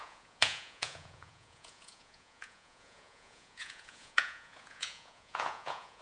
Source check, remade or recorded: remade